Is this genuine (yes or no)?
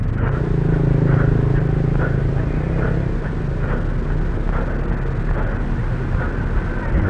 yes